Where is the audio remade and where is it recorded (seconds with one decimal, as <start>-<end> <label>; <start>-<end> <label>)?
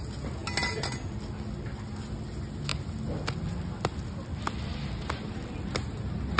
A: 0.0-6.4 recorded